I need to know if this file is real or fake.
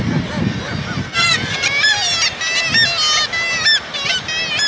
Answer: real